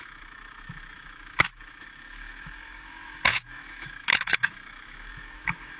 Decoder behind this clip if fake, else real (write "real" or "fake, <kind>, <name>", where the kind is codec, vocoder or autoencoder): fake, autoencoder, DAC-VAE